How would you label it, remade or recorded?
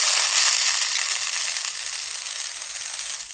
recorded